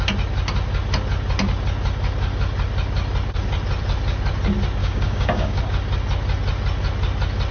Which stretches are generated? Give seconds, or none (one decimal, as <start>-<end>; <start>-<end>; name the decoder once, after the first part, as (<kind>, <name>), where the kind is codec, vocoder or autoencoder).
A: 4.8-5.6 (codec, DAC)